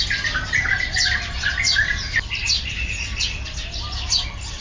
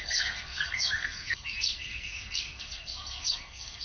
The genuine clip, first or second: first